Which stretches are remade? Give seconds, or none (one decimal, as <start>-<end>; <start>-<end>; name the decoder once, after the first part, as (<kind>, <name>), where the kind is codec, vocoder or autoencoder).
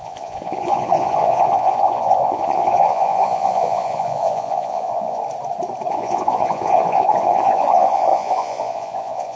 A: 0.0-5.2 (vocoder, Vocos); 5.9-9.4